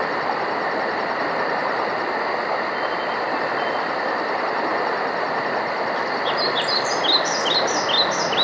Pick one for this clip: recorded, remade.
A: recorded